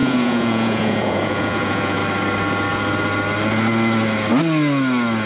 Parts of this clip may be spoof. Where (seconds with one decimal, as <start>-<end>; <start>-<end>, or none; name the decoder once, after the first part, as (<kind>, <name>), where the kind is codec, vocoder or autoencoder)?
0.0-2.0 (vocoder, Vocos)